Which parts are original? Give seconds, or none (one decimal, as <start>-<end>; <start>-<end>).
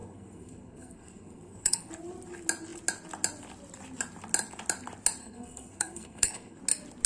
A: 1.9-5.2; 6.6-7.1